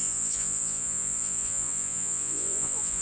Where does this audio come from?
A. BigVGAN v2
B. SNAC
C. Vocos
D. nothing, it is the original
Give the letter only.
C